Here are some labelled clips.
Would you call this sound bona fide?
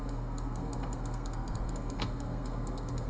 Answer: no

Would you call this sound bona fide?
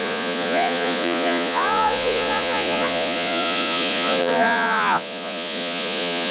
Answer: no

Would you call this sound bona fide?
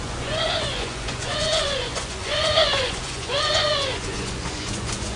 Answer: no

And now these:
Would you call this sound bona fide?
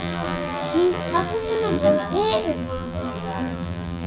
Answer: no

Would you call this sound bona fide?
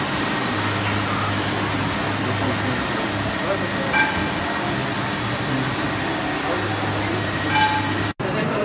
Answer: yes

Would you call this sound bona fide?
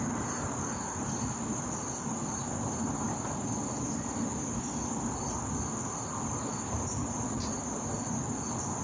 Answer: yes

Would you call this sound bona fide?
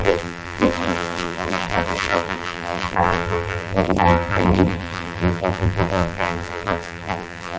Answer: no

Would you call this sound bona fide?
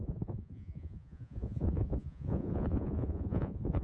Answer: no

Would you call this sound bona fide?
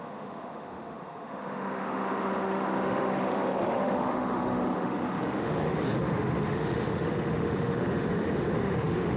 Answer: no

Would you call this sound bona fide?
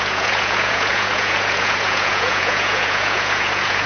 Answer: no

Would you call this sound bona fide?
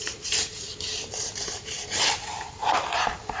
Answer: no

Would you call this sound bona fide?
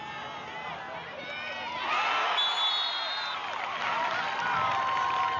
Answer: yes